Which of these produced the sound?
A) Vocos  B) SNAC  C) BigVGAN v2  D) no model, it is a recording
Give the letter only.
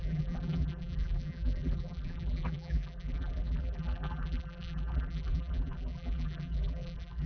C